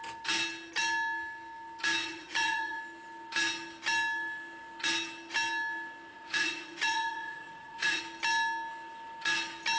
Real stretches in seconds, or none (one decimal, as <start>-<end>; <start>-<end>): 0.0-2.0; 2.8-6.1; 8.0-9.8